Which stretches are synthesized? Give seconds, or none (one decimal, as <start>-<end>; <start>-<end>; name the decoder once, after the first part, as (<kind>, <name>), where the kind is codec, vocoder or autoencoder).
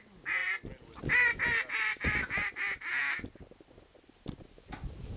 none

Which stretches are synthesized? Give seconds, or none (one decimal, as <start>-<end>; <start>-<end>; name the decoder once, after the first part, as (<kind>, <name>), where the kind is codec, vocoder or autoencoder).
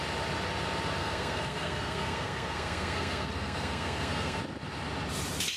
1.0-4.4 (codec, SNAC)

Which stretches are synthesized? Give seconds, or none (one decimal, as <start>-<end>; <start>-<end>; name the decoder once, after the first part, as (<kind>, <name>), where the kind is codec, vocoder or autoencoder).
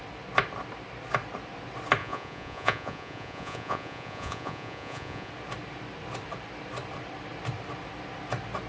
2.0-5.3 (vocoder, Vocos)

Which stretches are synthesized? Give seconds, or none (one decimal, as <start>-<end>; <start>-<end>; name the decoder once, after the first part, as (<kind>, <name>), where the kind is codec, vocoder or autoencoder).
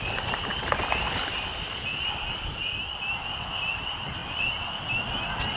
none